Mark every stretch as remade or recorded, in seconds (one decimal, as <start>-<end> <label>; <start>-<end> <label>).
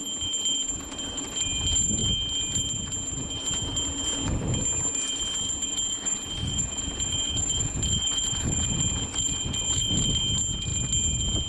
0.0-5.4 recorded; 5.4-10.2 remade; 10.2-11.5 recorded